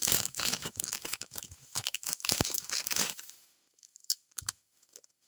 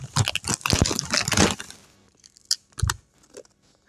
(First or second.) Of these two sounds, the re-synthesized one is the first